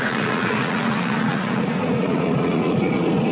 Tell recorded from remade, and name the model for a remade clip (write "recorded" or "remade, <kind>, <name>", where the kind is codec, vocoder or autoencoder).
remade, vocoder, Vocos